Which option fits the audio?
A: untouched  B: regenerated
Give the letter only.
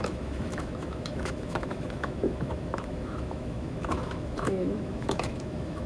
B